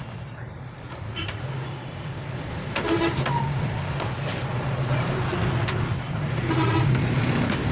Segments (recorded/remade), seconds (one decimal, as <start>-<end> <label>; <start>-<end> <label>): 0.0-5.3 remade; 5.3-5.9 recorded; 5.9-7.7 remade